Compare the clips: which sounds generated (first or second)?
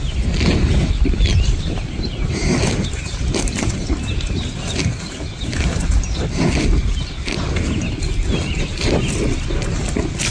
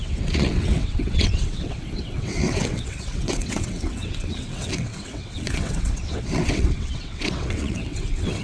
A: second